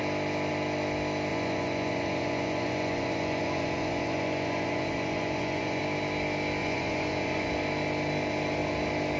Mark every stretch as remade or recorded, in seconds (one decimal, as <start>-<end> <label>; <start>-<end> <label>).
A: 0.0-1.3 recorded; 1.3-5.8 remade; 5.8-6.6 recorded; 6.6-7.5 remade; 7.5-9.2 recorded

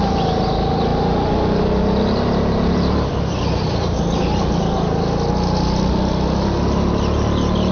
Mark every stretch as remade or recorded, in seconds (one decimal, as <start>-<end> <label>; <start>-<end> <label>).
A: 0.0-7.7 recorded

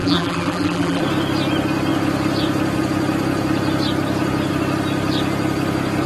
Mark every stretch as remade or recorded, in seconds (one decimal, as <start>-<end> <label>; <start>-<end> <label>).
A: 0.0-1.0 remade; 1.0-6.1 recorded

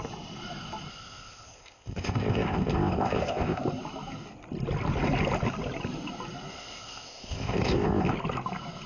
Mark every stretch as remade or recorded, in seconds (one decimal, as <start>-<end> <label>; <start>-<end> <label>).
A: 0.0-0.9 recorded; 0.9-3.6 remade; 3.6-6.5 recorded; 6.5-8.1 remade; 8.1-8.9 recorded

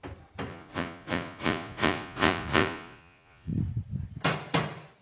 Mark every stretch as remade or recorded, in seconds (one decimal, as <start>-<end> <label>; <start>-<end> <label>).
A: 0.0-0.5 recorded; 0.5-3.5 remade; 3.5-5.0 recorded

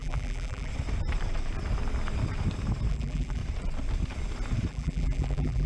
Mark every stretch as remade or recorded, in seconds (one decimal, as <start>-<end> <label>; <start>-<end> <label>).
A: 0.0-0.7 remade; 0.7-2.9 recorded; 2.9-3.4 remade; 3.4-4.7 recorded; 4.7-5.7 remade